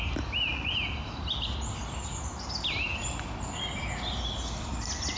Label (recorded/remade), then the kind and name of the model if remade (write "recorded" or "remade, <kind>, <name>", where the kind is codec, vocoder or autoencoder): recorded